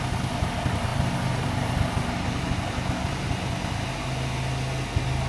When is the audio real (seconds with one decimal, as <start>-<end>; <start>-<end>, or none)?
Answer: 0.0-5.3